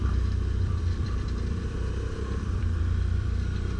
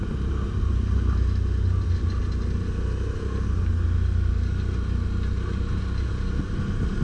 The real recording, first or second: second